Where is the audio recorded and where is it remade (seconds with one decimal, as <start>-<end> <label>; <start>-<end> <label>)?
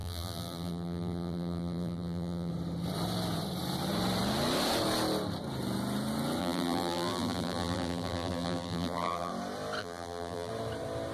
0.0-2.5 remade; 2.5-6.4 recorded; 6.4-9.3 remade; 9.3-9.8 recorded; 9.8-10.5 remade; 10.5-11.1 recorded